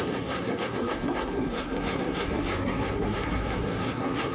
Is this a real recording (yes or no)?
no